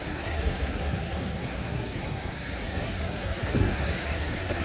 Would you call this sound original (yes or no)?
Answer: no